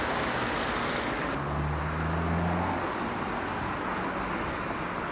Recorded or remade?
recorded